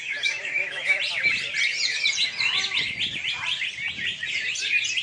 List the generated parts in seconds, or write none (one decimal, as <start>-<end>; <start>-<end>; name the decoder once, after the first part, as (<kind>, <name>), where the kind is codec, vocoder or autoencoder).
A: 0.0-1.0 (autoencoder, DAC-VAE)